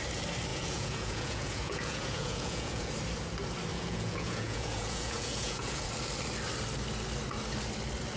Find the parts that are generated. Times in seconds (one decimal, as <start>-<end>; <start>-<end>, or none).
0.5-2.9; 3.7-5.9